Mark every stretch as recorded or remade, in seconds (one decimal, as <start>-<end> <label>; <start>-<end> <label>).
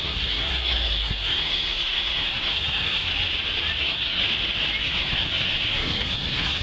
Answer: 0.0-3.1 remade; 3.1-3.8 recorded; 3.8-4.2 remade; 4.2-4.8 recorded; 4.8-6.6 remade